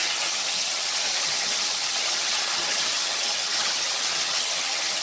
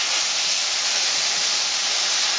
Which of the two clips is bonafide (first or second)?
second